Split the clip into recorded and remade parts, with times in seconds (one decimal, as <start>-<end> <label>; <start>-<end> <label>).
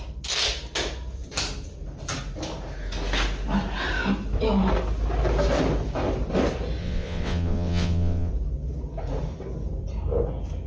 0.0-6.8 recorded; 6.8-8.3 remade; 8.3-10.7 recorded